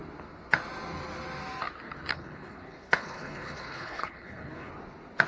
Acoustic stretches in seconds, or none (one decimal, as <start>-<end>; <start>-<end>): 0.0-2.1; 4.7-5.3